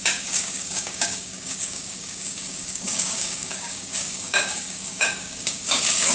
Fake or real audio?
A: fake